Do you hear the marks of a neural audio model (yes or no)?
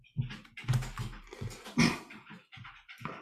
no